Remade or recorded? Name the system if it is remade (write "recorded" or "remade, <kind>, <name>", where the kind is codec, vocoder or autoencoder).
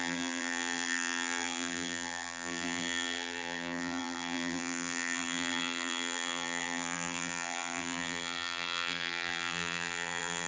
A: remade, vocoder, BigVGAN v2